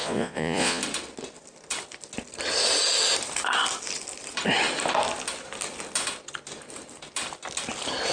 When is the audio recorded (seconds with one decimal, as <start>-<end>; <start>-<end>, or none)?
0.8-8.1